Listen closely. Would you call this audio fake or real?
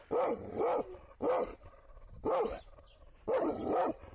real